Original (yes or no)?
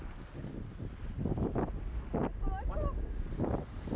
yes